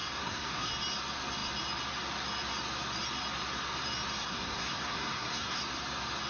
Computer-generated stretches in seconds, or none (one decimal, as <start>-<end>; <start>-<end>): 0.0-0.7; 4.2-5.6